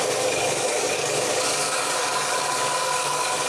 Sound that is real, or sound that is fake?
fake